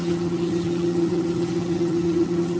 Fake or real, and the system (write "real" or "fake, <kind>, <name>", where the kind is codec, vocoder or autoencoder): fake, vocoder, HiFi-GAN